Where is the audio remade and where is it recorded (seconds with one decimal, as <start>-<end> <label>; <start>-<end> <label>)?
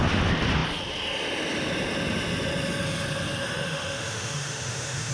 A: 0.0-3.4 recorded; 3.4-5.1 remade